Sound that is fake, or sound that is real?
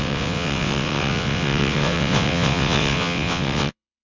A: fake